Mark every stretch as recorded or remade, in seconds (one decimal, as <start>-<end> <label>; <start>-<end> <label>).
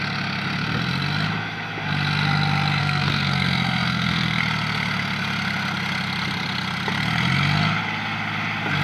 0.0-2.8 recorded; 2.8-4.4 remade; 4.4-8.8 recorded